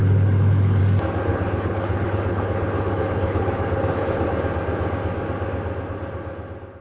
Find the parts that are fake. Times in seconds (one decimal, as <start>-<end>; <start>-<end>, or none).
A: 0.0-0.8; 1.3-4.4